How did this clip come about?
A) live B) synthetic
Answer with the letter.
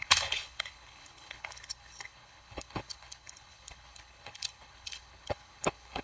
B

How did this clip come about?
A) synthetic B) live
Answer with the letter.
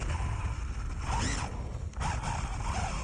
B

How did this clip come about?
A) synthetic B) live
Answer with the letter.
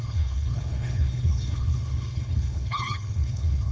A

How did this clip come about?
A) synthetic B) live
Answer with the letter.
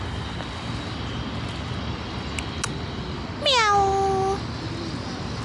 B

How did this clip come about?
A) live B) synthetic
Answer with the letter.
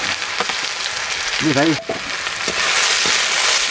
A